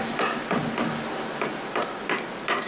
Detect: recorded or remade recorded